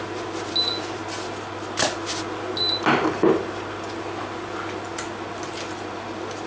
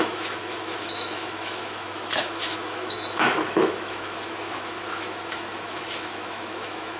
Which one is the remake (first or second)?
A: second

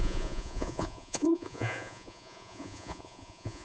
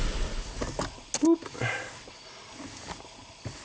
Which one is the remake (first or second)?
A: first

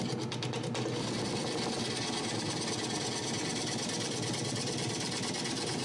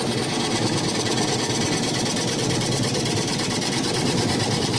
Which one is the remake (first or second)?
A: second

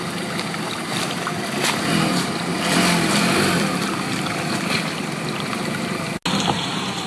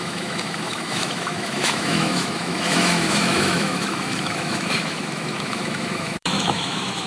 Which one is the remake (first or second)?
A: second